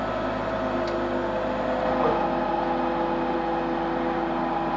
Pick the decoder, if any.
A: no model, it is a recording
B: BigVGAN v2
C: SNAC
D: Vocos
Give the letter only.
A